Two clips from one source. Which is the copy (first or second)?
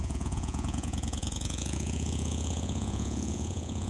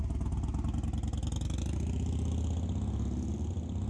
first